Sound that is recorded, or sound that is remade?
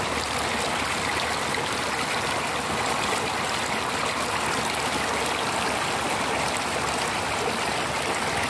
recorded